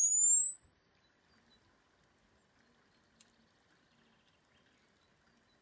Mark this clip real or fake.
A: real